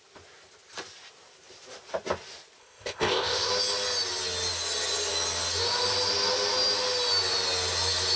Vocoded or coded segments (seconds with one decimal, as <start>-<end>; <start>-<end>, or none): 2.6-3.5